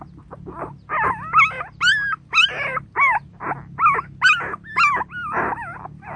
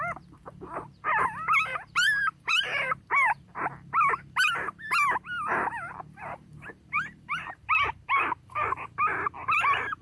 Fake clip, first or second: second